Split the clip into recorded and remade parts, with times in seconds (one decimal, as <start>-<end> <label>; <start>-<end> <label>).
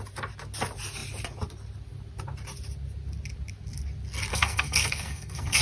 0.0-4.3 recorded; 4.3-5.6 remade